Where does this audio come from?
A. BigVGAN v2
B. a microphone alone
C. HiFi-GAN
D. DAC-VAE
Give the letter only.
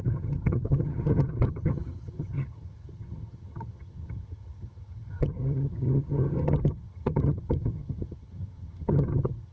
C